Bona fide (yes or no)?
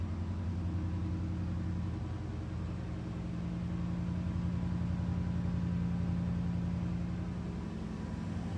yes